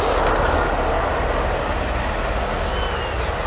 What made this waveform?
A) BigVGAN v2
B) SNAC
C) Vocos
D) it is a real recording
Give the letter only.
D